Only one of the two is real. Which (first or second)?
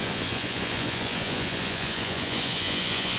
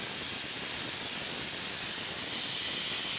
second